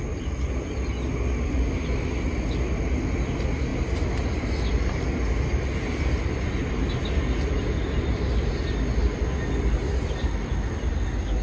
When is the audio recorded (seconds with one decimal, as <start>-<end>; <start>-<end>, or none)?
0.0-11.4